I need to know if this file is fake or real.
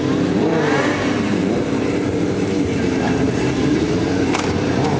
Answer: fake